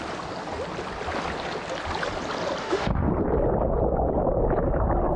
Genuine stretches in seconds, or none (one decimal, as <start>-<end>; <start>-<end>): 0.0-2.6; 3.1-5.2

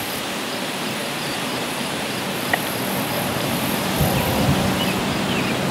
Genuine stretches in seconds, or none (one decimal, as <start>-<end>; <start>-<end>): 0.0-1.0; 4.0-5.7

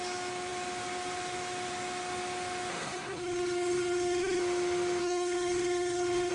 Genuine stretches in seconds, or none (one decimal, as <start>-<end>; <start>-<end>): 0.0-2.7; 4.4-5.0

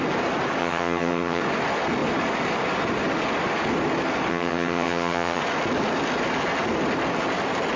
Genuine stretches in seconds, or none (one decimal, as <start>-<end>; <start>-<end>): 0.0-0.6; 1.4-4.3; 5.4-7.8